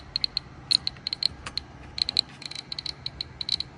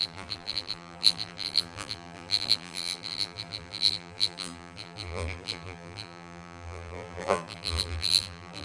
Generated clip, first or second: second